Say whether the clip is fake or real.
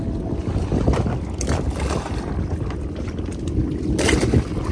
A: real